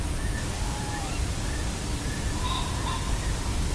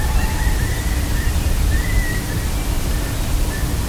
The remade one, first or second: first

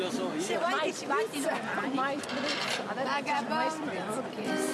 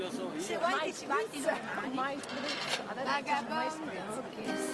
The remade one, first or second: first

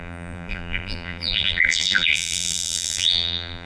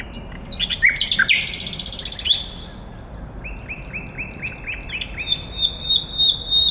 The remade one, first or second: first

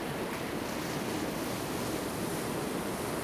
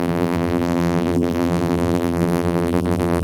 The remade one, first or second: second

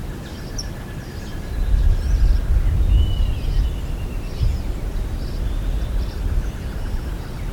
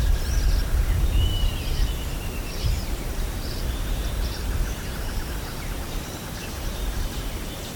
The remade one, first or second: second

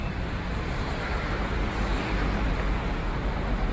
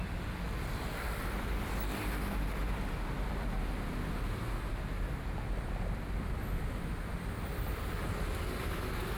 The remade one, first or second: first